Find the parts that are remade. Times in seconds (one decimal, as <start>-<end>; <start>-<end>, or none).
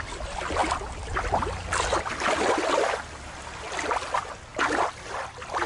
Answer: none